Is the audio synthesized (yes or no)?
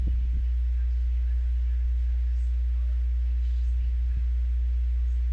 no